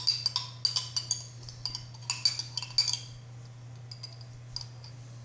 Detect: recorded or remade recorded